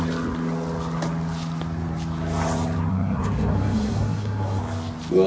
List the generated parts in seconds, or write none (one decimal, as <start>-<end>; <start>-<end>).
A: 2.9-4.6